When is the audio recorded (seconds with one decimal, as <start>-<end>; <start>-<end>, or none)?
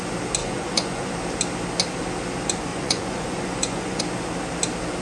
0.0-0.4; 1.1-2.7; 4.0-5.0